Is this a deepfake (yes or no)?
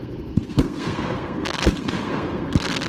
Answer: yes